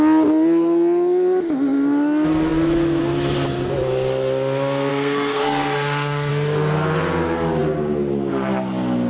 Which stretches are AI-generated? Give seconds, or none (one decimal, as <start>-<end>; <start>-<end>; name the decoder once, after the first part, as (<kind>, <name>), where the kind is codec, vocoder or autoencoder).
4.9-6.3 (codec, SNAC)